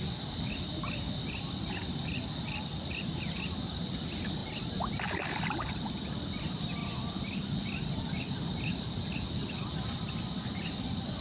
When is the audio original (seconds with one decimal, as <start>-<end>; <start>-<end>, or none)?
0.0-11.2